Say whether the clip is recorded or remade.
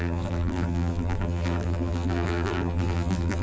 remade